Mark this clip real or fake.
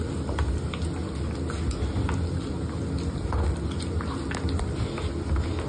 real